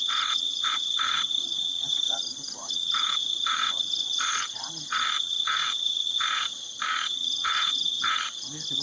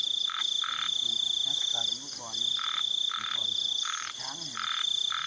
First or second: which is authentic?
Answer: second